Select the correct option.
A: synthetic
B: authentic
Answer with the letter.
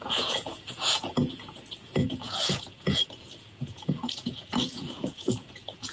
A